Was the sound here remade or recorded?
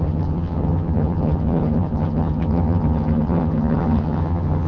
remade